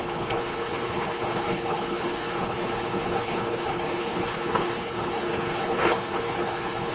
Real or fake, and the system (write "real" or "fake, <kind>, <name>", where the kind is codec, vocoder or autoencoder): fake, codec, HILCodec